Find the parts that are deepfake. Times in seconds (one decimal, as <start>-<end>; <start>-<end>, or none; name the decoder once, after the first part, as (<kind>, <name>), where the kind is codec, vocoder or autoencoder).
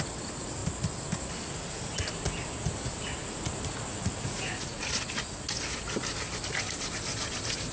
3.9-4.8 (vocoder, Vocos)